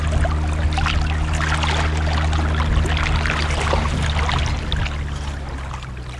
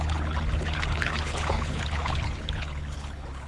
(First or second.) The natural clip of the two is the first